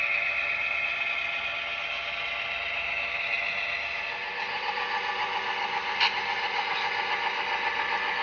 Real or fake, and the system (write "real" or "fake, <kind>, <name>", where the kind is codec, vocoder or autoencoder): real